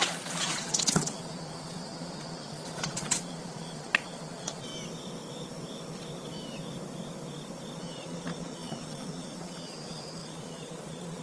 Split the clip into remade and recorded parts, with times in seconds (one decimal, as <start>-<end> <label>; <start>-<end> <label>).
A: 0.0-4.7 remade; 4.7-7.8 recorded; 7.8-11.2 remade